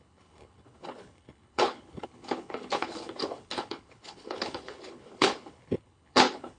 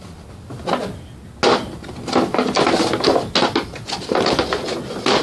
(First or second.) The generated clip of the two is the first